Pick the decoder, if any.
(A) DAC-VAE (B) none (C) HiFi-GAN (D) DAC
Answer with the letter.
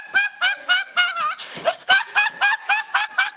B